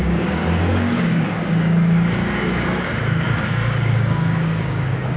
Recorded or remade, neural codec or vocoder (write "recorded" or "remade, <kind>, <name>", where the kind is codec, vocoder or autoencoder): remade, codec, DAC